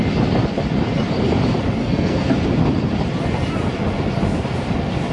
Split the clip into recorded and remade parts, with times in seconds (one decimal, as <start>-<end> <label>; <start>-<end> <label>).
0.0-1.8 recorded; 1.8-2.3 remade; 2.3-5.1 recorded